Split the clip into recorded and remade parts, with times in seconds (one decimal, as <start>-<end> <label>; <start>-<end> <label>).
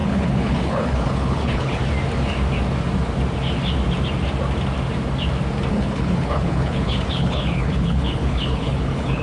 0.0-1.8 remade; 1.8-5.7 recorded; 5.7-9.2 remade